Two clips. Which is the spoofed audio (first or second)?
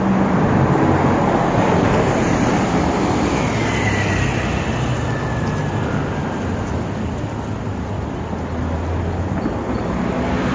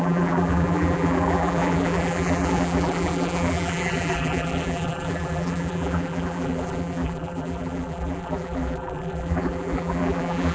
second